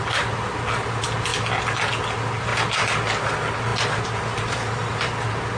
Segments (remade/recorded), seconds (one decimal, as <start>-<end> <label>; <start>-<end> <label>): 0.0-5.6 recorded